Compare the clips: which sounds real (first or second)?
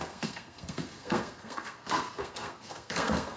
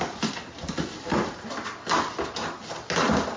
second